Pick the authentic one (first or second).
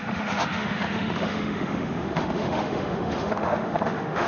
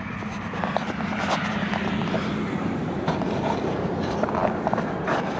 second